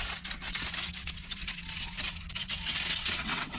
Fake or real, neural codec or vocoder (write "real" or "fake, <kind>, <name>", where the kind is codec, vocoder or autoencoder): fake, vocoder, WaveNeXt